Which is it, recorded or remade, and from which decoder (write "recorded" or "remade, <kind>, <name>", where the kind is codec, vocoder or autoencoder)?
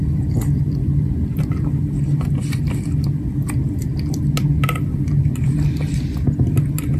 recorded